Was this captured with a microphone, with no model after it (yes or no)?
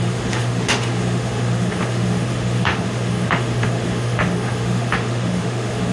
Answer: no